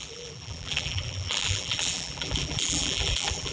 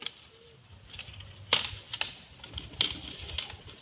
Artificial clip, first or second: first